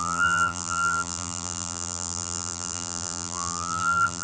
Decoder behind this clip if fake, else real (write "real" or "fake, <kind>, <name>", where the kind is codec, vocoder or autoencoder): fake, vocoder, BigVGAN v2